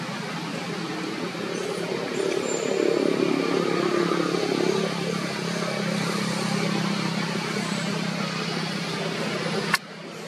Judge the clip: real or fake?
real